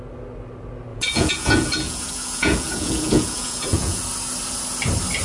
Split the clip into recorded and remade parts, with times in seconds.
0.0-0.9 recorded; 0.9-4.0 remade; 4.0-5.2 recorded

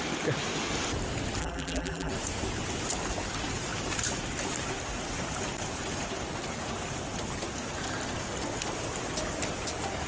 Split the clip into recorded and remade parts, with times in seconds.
0.0-1.4 recorded; 1.4-2.1 remade; 2.1-10.1 recorded

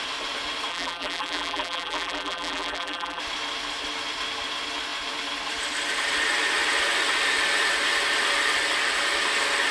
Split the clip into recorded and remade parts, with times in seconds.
0.0-0.7 recorded; 0.7-3.2 remade; 3.2-9.7 recorded

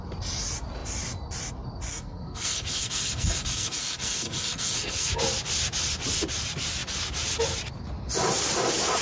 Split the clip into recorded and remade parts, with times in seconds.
0.0-1.9 recorded; 1.9-5.1 remade; 5.1-9.0 recorded

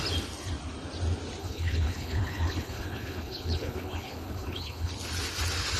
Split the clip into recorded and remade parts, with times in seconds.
0.0-1.4 recorded; 1.4-4.9 remade; 4.9-5.8 recorded

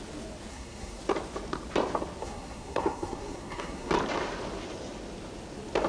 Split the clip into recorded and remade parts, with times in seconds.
0.0-0.5 recorded; 0.5-1.0 remade; 1.0-2.2 recorded; 2.2-3.9 remade; 3.9-5.9 recorded

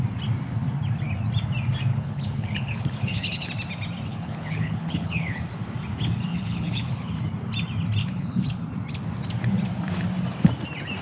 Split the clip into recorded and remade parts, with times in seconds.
0.0-1.9 recorded; 1.9-3.5 remade; 3.5-4.1 recorded; 4.1-5.4 remade; 5.4-6.3 recorded; 6.3-7.1 remade; 7.1-8.0 recorded; 8.0-8.6 remade; 8.6-11.0 recorded